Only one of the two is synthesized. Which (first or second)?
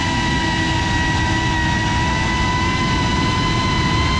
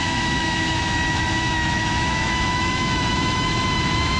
second